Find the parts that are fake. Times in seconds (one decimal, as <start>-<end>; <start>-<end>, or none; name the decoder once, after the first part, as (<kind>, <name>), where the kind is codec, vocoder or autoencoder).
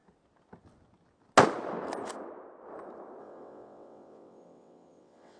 3.2-5.4 (vocoder, WaveNeXt)